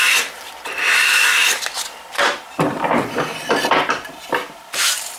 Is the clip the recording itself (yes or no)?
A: no